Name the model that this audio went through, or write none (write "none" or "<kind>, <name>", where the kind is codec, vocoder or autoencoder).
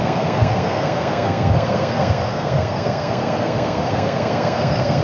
codec, SNAC